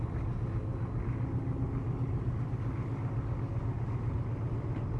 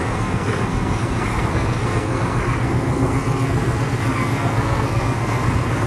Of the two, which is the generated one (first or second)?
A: second